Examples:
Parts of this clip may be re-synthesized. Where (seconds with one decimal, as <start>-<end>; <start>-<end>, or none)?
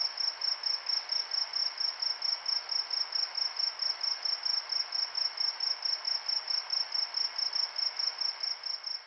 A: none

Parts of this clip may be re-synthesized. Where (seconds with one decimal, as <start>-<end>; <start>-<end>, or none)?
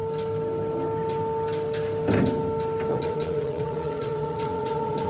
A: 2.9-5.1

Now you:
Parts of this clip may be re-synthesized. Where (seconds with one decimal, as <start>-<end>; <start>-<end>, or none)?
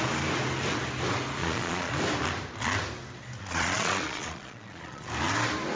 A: 1.4-1.9; 3.4-5.1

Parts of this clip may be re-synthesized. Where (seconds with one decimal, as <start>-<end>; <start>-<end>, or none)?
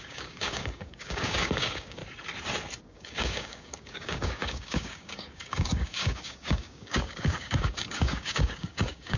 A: 0.0-2.0; 2.8-9.2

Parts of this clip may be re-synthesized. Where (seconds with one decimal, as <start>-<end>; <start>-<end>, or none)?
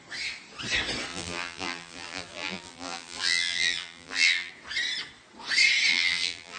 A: 1.1-4.5; 5.9-6.6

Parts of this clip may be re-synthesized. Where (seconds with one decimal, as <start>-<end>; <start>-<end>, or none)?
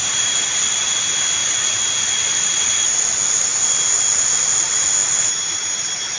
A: none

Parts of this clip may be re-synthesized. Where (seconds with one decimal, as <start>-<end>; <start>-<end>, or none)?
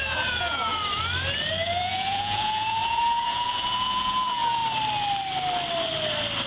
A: 0.0-0.7; 1.5-4.6